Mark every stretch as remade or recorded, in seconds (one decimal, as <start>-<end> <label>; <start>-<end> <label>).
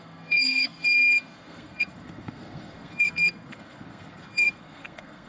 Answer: 0.0-5.3 remade